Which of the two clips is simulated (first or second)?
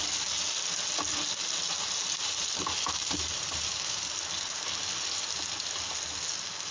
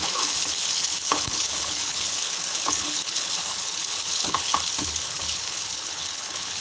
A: second